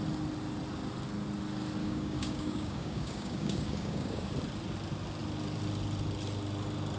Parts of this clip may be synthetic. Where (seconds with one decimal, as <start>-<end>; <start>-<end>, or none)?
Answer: 1.8-4.3